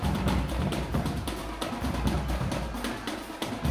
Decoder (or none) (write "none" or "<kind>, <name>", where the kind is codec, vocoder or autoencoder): none